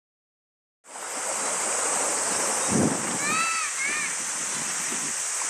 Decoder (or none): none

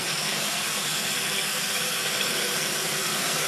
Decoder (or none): codec, SNAC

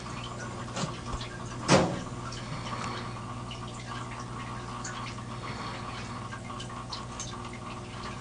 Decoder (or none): none